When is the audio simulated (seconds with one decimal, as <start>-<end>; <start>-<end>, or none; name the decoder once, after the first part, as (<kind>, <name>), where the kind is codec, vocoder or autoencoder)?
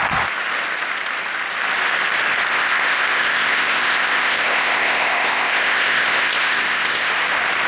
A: 2.5-7.1 (codec, ZipCodec)